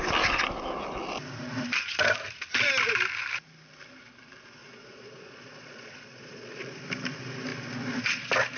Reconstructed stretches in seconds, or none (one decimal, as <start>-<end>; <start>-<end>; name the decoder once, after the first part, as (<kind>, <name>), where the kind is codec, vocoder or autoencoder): 4.6-6.7 (vocoder, Vocos)